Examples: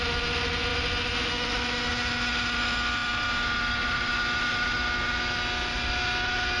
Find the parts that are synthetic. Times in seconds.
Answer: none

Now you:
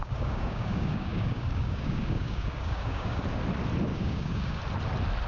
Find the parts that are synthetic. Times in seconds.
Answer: 0.0-3.2 (codec, DAC); 3.9-4.6

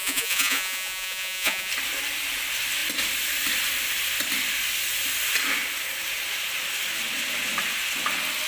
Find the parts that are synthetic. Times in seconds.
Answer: 0.0-1.7 (vocoder, Vocos)